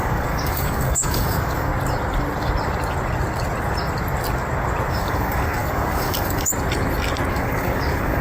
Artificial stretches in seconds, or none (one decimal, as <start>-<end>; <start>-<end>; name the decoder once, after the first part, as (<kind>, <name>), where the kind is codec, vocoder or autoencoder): 0.0-1.7 (codec, DAC); 4.9-6.5; 7.3-8.2